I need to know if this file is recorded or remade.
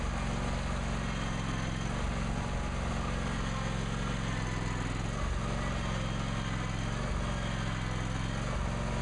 recorded